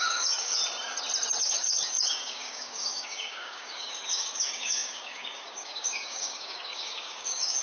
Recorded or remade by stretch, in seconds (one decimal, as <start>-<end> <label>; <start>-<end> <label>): 0.0-0.6 remade; 0.6-1.4 recorded; 1.4-7.6 remade